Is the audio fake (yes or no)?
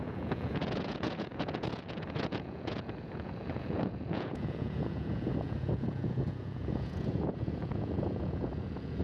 yes